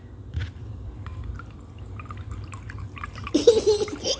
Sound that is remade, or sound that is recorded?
recorded